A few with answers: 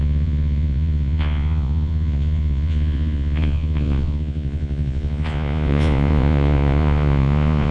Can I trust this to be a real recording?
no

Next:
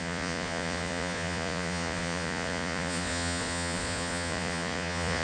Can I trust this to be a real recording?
no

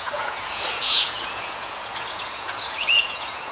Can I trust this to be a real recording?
no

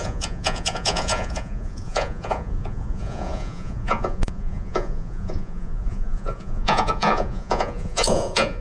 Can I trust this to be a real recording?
no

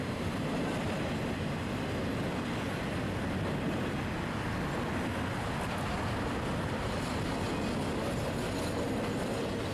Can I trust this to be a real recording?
yes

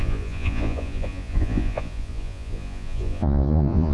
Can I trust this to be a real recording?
no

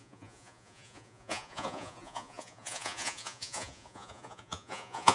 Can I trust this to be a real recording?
no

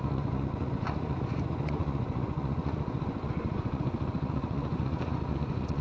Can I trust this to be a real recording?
no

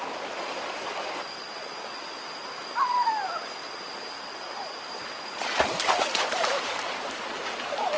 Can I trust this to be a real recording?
yes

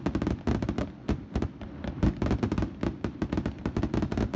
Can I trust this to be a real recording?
yes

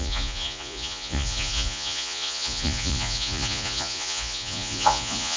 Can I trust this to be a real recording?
no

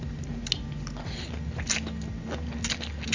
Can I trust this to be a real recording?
yes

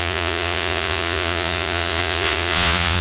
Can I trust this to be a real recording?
no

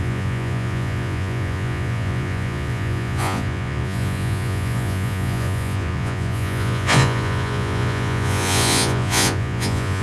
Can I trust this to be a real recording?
no